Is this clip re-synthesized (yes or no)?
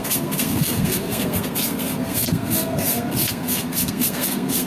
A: yes